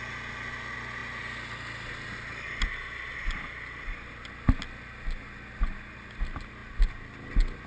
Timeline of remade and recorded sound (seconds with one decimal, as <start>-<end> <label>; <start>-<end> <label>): 0.0-7.7 recorded